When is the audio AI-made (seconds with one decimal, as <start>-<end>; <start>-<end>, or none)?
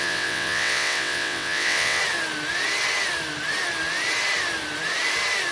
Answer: 0.0-2.0